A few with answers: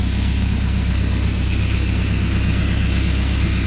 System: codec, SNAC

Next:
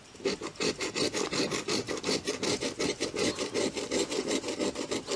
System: vocoder, BigVGAN v2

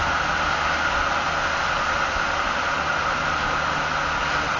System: none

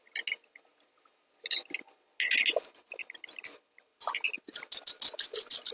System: none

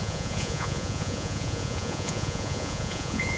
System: vocoder, Vocos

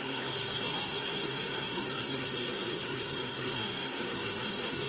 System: codec, SNAC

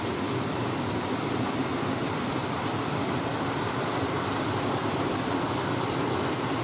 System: vocoder, BigVGAN v2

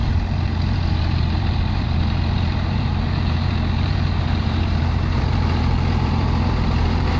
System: vocoder, BigVGAN v2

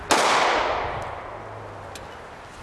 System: none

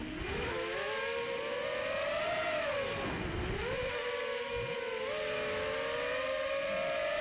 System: none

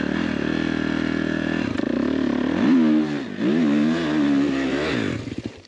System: none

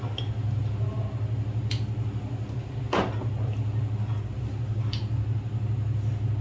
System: none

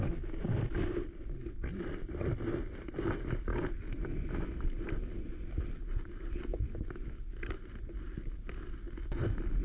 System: none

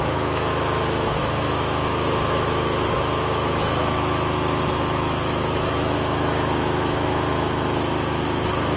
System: autoencoder, DAC-VAE